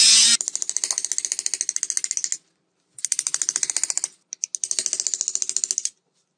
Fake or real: real